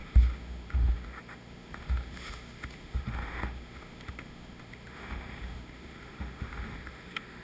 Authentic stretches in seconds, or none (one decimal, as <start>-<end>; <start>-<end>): none